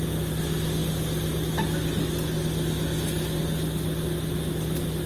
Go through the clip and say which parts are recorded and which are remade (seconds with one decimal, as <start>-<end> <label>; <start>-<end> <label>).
0.0-5.1 recorded